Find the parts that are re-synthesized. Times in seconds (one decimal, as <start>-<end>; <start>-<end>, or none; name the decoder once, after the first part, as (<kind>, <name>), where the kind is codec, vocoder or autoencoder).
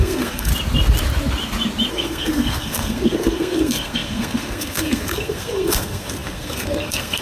0.0-0.5 (codec, SNAC); 1.9-7.2